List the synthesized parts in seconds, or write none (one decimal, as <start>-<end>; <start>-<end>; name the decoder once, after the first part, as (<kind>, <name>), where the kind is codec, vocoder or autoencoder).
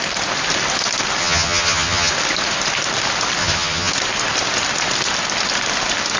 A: 1.2-2.1 (vocoder, HiFi-GAN); 3.4-3.9